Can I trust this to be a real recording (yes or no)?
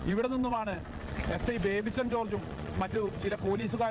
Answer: no